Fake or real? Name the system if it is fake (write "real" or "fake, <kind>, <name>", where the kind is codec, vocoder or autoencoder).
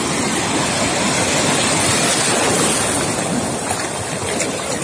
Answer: real